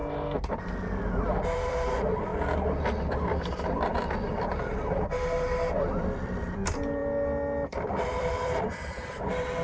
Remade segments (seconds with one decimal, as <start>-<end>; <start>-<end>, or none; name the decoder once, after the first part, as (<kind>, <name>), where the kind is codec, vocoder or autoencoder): none